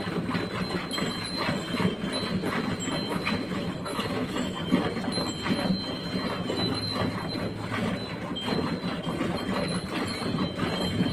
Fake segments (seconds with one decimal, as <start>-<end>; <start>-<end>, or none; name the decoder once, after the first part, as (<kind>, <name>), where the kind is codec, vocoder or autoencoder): 3.1-4.7 (autoencoder, DAC-VAE)